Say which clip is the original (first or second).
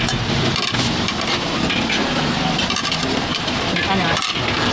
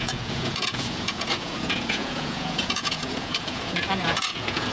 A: first